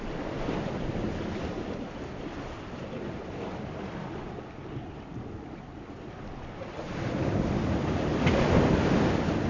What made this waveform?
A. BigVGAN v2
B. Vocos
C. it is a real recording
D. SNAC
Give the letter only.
C